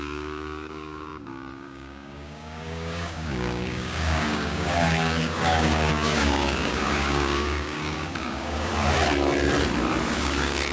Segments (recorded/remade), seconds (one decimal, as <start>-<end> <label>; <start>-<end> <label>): 0.0-8.7 remade; 8.7-10.1 recorded; 10.1-10.7 remade